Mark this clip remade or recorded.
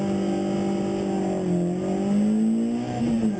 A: recorded